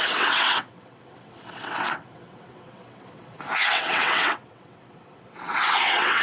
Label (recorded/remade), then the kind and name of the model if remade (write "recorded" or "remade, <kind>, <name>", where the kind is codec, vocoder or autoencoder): remade, vocoder, WaveNeXt